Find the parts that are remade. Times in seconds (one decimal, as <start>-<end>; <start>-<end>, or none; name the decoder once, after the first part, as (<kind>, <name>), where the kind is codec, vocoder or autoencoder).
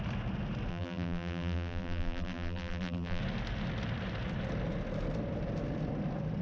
0.7-3.2 (vocoder, BigVGAN v2)